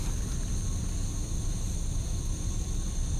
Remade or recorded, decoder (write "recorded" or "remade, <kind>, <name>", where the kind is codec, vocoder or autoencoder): recorded